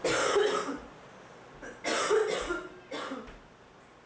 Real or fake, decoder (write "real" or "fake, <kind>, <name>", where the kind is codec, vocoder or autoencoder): real